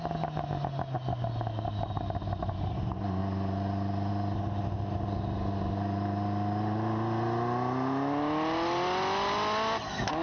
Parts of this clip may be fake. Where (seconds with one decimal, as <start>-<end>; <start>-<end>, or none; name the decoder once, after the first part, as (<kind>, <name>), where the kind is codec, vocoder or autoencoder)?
none